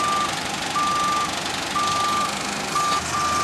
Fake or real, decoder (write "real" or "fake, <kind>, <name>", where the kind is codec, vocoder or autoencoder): real